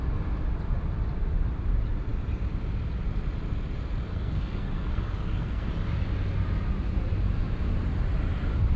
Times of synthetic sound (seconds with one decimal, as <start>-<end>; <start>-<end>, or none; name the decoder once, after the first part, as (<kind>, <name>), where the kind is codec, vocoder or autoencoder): 4.1-5.7 (codec, SNAC)